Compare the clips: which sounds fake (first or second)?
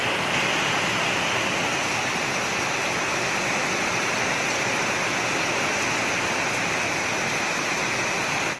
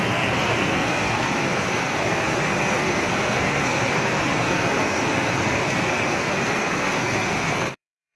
second